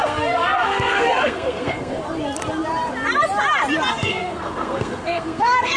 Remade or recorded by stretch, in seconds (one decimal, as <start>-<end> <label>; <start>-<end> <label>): 0.0-2.0 remade; 2.0-3.9 recorded; 3.9-5.8 remade